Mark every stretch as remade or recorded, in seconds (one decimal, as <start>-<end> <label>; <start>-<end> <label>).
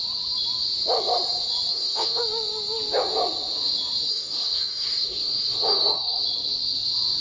0.0-1.7 recorded; 1.7-2.2 remade; 2.2-4.1 recorded; 4.1-6.2 remade; 6.2-7.2 recorded